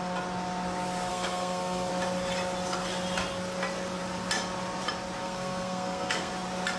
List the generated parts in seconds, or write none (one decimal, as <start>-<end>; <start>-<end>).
1.1-1.9; 5.2-6.3